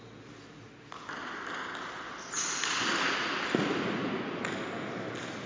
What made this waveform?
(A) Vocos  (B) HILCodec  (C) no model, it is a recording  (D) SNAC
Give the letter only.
C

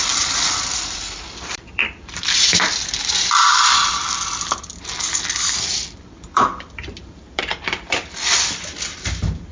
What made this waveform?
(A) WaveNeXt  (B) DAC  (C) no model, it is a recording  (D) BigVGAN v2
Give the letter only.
D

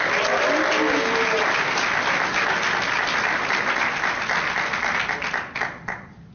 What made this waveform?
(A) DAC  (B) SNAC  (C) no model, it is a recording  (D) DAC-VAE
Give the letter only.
C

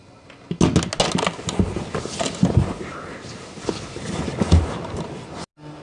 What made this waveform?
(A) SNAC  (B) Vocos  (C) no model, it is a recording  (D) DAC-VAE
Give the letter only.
C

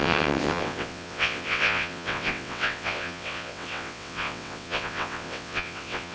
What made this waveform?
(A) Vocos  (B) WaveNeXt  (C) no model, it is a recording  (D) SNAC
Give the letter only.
B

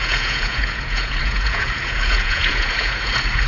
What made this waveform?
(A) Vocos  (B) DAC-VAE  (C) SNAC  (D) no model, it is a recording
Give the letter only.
A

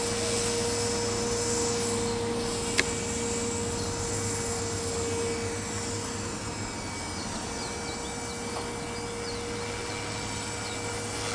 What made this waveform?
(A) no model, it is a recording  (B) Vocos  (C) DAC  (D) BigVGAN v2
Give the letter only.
A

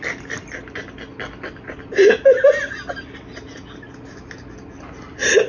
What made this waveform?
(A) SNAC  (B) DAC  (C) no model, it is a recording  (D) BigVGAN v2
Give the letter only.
C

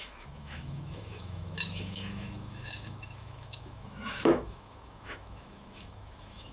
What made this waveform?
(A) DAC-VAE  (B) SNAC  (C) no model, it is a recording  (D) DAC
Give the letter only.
A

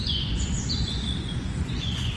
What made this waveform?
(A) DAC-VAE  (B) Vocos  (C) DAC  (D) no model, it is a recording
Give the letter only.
B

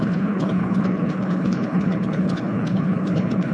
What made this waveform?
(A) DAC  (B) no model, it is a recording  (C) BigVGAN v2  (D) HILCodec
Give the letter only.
D